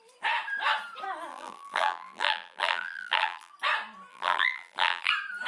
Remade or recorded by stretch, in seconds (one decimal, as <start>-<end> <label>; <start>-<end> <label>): 0.0-1.3 recorded; 1.3-3.5 remade; 3.5-4.1 recorded; 4.1-5.1 remade; 5.1-5.5 recorded